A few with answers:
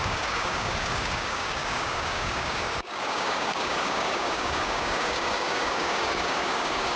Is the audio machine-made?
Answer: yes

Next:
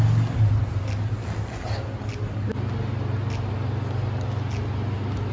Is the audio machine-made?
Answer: no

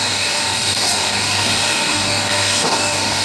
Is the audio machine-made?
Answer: yes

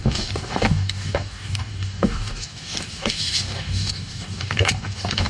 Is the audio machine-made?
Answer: yes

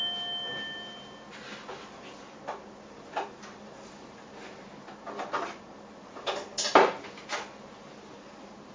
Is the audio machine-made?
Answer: no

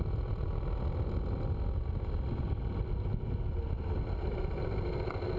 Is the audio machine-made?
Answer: no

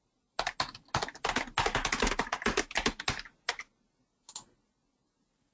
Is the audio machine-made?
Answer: no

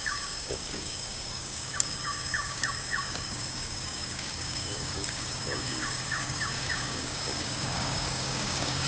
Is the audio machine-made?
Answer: yes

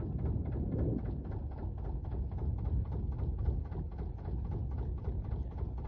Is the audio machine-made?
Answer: no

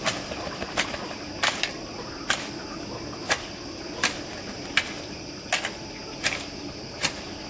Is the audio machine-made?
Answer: no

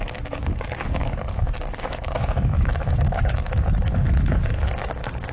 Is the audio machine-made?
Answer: yes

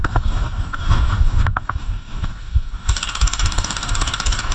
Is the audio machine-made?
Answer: yes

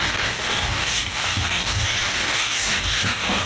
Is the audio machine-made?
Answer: yes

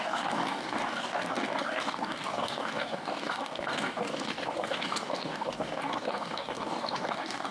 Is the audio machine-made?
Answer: yes